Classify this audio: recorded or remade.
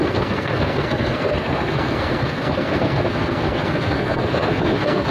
remade